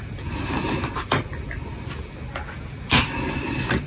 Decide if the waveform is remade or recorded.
recorded